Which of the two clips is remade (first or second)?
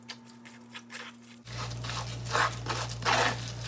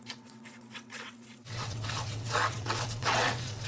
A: second